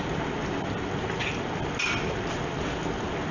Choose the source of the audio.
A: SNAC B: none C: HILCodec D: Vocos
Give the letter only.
B